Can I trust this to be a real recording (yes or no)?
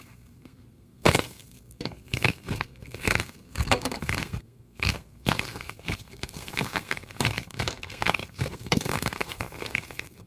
no